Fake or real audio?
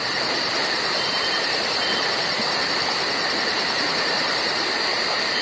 fake